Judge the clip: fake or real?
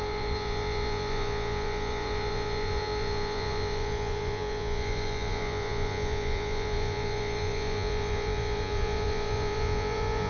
fake